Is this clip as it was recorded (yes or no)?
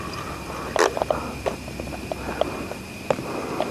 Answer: yes